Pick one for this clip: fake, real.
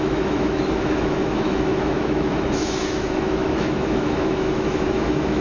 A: fake